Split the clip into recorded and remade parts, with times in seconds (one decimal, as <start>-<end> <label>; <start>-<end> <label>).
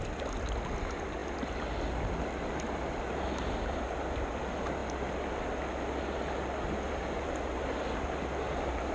0.0-8.9 recorded